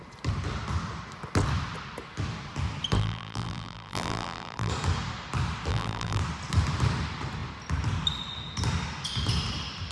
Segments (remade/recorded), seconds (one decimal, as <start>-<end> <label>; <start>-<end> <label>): 0.0-3.0 recorded; 3.0-4.7 remade; 4.7-5.7 recorded; 5.7-6.2 remade; 6.2-9.9 recorded